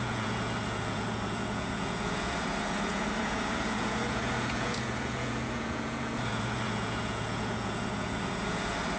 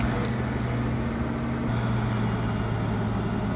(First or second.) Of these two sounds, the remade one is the first